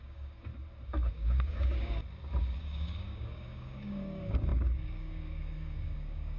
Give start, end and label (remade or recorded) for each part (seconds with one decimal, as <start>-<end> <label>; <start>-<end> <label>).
0.0-0.5 remade; 0.5-1.1 recorded; 1.1-2.0 remade; 2.0-2.6 recorded; 2.6-6.4 remade